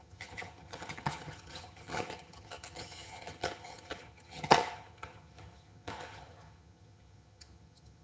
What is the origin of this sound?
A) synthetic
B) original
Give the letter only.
A